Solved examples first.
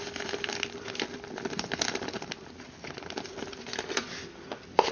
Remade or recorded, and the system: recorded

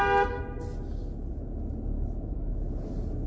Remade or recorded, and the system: recorded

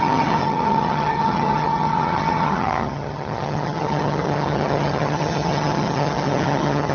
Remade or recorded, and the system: remade, vocoder, HiFi-GAN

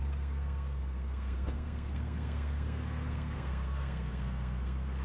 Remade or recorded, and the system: remade, codec, SNAC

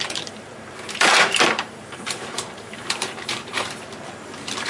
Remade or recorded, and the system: remade, vocoder, BigVGAN v2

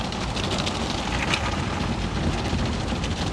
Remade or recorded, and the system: recorded